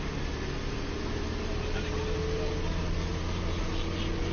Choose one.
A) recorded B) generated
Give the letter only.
A